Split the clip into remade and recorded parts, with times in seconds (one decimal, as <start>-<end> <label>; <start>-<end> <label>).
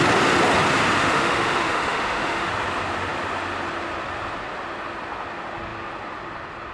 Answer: 0.0-1.0 recorded; 1.0-2.5 remade; 2.5-6.7 recorded